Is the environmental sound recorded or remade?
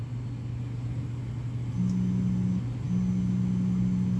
recorded